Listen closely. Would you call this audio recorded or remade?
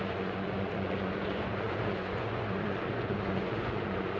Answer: remade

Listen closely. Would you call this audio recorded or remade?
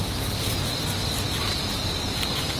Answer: recorded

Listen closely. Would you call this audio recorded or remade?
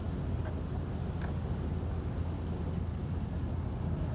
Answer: recorded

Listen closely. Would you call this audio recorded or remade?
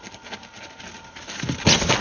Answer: recorded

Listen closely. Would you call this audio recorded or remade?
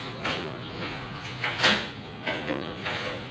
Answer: remade